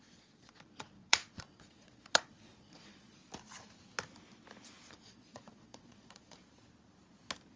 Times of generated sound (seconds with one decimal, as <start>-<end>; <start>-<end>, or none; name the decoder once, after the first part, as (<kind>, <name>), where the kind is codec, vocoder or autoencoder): 0.0-3.2 (vocoder, Vocos); 4.9-6.4